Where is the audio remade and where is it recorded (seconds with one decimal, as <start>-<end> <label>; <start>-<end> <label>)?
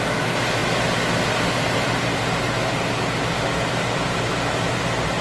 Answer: 0.0-5.2 recorded